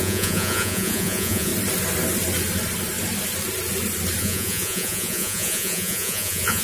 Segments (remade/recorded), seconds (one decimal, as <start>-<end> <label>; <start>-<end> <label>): 0.0-1.5 remade; 1.5-4.2 recorded; 4.2-6.6 remade